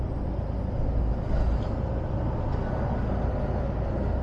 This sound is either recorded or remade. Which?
recorded